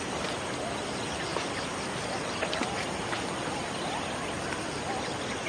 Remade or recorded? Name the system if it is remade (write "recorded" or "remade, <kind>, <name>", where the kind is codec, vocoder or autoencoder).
recorded